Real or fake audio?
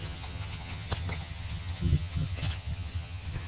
fake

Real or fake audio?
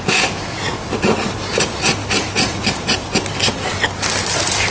real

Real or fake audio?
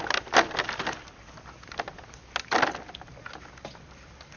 real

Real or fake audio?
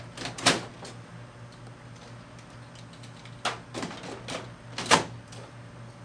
real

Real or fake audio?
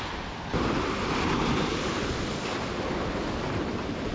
real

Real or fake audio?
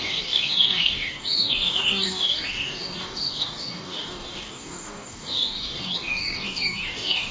fake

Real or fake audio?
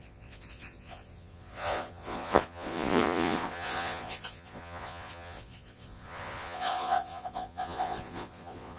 fake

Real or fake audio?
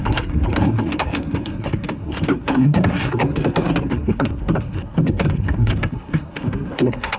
fake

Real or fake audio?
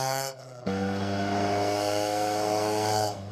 fake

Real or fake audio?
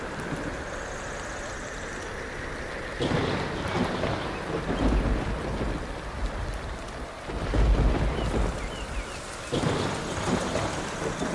real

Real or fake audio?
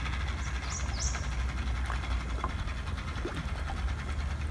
real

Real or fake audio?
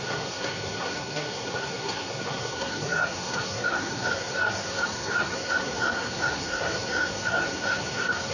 fake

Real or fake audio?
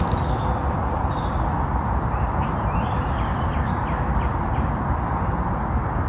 real